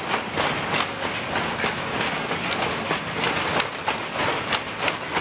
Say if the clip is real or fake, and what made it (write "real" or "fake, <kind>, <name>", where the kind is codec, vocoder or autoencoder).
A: real